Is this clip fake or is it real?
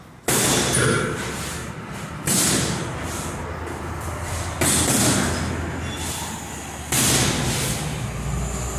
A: real